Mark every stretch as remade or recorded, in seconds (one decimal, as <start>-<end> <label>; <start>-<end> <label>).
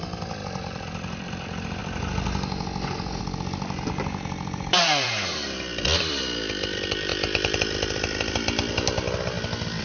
0.0-1.8 remade; 1.8-3.2 recorded; 3.2-9.8 remade